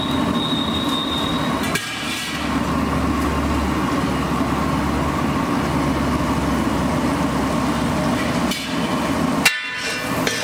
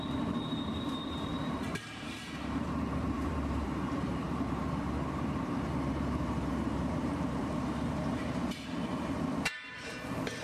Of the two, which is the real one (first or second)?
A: first